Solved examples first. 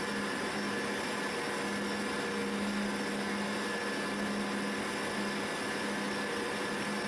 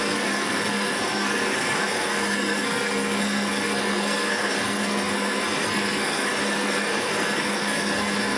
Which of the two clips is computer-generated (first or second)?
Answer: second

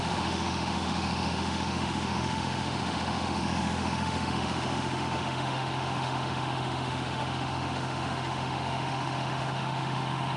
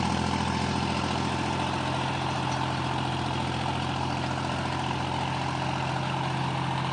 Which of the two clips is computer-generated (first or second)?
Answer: first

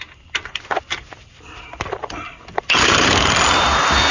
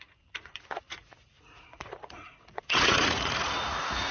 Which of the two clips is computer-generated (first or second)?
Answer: second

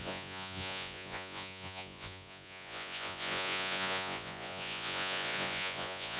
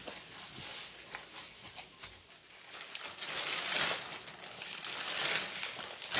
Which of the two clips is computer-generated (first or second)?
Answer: first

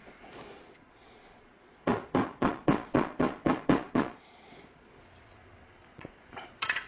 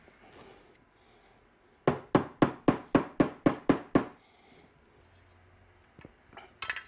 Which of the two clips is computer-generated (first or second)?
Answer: first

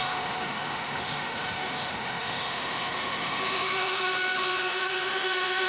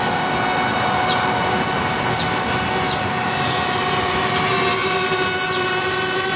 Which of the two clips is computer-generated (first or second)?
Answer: first